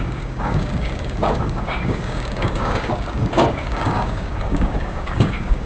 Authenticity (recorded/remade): remade